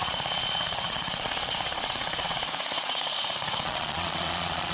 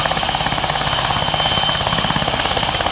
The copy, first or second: first